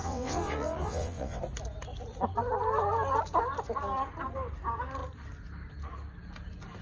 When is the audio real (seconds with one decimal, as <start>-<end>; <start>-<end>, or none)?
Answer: 1.4-6.8